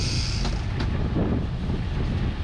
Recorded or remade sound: recorded